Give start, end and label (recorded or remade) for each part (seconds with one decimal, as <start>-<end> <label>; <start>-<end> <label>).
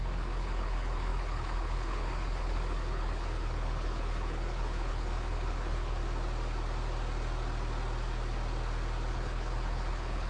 0.0-6.0 remade; 6.0-9.1 recorded; 9.1-10.3 remade